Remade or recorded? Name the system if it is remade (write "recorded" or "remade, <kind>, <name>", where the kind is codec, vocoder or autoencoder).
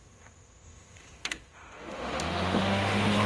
remade, autoencoder, DAC-VAE